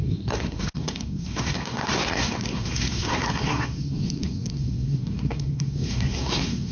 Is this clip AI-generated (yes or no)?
yes